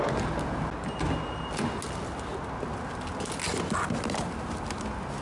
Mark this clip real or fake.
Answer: real